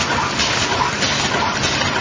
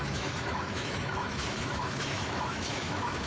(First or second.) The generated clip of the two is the second